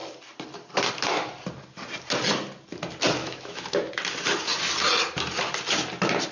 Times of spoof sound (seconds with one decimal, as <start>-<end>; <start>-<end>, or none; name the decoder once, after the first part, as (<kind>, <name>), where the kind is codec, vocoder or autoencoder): 3.2-3.9 (autoencoder, DAC-VAE)